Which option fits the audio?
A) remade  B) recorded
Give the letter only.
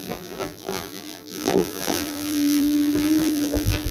A